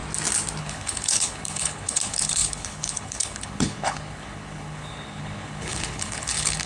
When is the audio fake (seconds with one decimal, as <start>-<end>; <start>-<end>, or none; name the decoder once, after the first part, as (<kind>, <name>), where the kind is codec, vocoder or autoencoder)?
0.6-6.7 (codec, HILCodec)